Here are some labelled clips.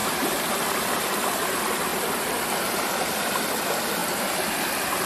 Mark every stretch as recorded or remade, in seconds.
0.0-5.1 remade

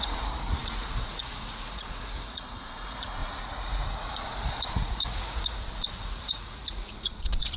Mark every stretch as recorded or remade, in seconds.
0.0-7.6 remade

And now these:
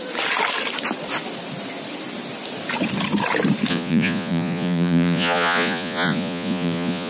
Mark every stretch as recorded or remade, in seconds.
0.0-3.7 recorded; 3.7-7.1 remade